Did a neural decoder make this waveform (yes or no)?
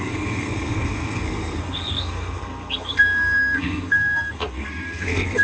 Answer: yes